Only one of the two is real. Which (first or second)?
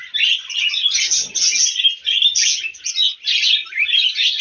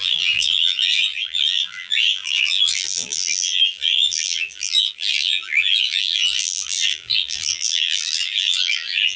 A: first